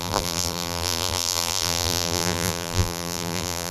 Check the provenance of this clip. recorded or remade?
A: remade